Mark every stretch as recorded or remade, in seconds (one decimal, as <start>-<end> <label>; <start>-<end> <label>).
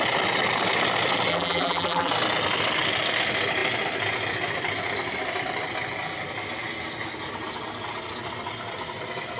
0.0-1.3 recorded; 1.3-2.1 remade; 2.1-9.4 recorded